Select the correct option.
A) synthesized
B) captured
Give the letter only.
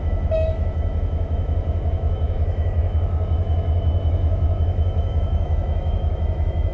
A